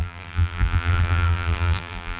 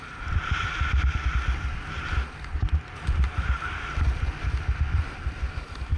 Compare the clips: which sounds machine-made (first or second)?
first